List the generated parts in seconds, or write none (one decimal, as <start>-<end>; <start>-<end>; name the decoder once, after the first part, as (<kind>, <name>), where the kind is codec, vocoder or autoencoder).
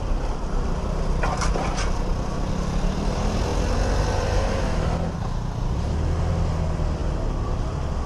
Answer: 0.0-3.5 (vocoder, BigVGAN v2); 6.3-7.0; 7.6-8.1